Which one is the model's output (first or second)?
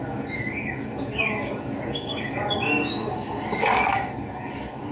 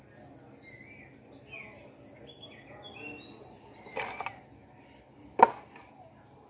first